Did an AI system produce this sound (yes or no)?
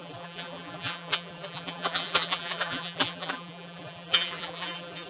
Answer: yes